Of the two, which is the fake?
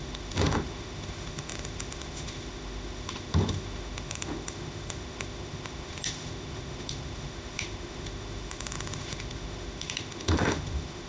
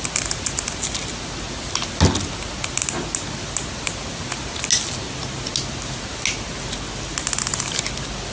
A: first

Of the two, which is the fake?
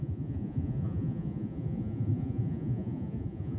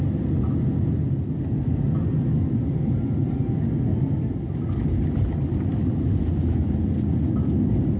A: first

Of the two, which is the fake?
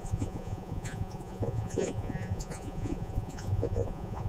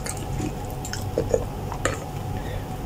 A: first